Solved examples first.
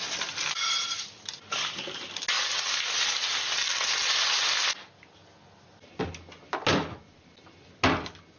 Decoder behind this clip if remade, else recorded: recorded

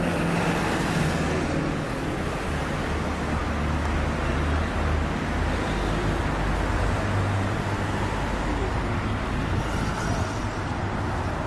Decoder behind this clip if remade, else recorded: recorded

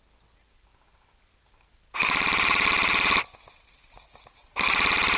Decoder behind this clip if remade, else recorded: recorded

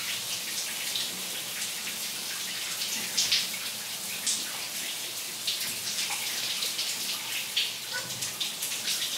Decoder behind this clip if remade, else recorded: recorded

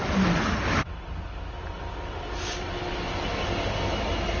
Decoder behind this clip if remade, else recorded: recorded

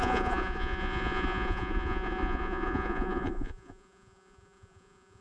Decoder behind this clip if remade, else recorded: remade, vocoder, Vocos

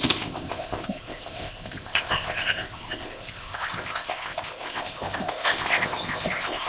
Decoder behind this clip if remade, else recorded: remade, codec, ZipCodec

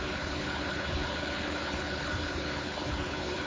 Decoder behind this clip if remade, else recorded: remade, codec, HILCodec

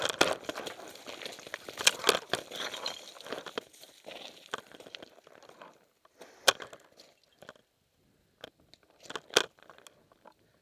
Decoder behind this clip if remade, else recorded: recorded